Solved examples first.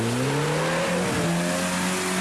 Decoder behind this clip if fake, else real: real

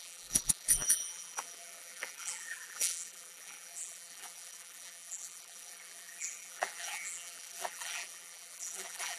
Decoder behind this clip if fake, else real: fake, vocoder, BigVGAN v2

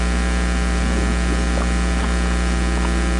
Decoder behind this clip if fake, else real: real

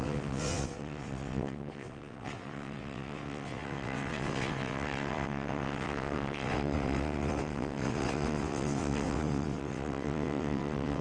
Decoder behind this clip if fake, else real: fake, vocoder, WaveNeXt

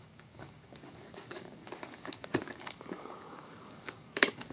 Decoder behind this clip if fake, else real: fake, codec, DAC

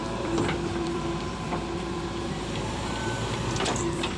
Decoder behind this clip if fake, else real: fake, vocoder, BigVGAN v2